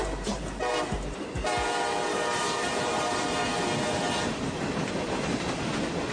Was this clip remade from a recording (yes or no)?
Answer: yes